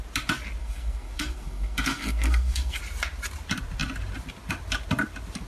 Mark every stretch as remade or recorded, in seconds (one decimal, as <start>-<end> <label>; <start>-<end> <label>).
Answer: 0.0-0.6 recorded; 0.6-2.8 remade; 2.8-5.5 recorded